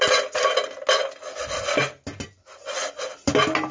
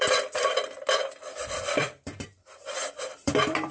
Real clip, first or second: first